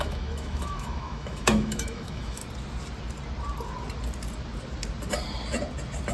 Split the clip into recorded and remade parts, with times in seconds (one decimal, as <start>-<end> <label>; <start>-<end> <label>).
0.0-2.4 remade; 2.4-6.1 recorded